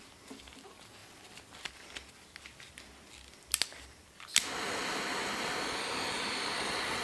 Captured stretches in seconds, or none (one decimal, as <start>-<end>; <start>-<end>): 0.0-7.0